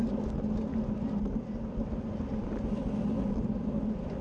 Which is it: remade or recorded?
recorded